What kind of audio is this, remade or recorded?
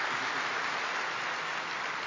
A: recorded